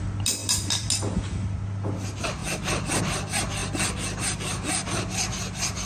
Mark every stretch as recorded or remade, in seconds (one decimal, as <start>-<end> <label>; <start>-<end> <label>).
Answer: 0.0-0.4 recorded; 0.4-0.9 remade; 0.9-2.4 recorded; 2.4-3.0 remade; 3.0-5.9 recorded